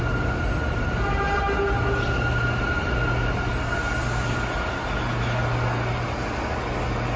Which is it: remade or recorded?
recorded